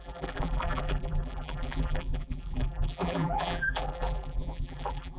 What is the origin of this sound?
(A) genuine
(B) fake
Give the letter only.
B